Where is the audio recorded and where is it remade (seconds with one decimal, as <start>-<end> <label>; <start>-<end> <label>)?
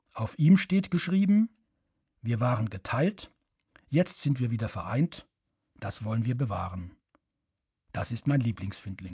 0.0-4.9 recorded; 4.9-9.1 remade